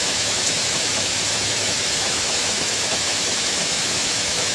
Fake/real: fake